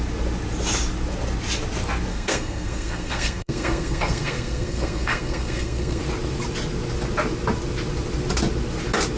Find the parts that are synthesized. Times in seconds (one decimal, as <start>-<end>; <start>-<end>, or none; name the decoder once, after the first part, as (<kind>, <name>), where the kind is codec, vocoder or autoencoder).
2.1-6.0 (codec, SNAC)